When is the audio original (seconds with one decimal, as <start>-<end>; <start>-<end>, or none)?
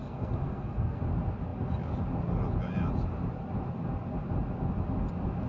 1.0-5.5